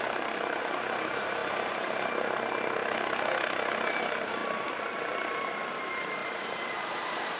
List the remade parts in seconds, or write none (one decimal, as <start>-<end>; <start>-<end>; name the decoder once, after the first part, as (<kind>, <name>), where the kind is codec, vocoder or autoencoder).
0.0-2.8 (vocoder, BigVGAN v2); 3.9-7.4